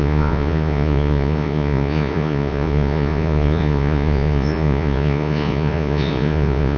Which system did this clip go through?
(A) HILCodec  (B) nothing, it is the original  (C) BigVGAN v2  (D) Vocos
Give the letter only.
D